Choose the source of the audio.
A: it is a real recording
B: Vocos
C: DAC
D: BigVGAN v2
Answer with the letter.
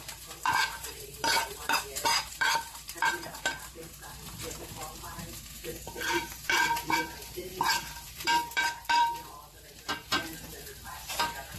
D